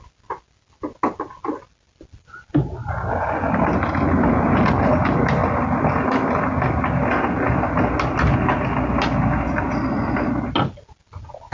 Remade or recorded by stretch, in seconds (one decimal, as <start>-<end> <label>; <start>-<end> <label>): 0.0-11.5 recorded